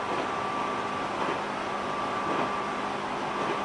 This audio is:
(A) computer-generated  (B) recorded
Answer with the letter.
A